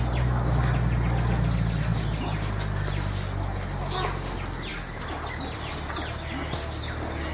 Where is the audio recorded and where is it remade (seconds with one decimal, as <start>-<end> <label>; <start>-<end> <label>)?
0.0-7.3 recorded